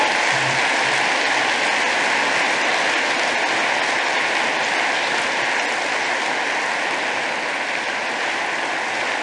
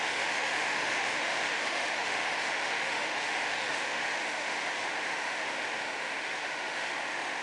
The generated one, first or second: second